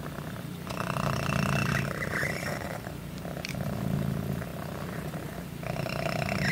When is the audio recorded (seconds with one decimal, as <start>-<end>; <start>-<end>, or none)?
0.0-1.6; 4.0-6.5